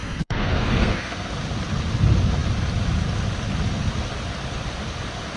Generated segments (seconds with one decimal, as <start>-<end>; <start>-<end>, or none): 0.0-1.3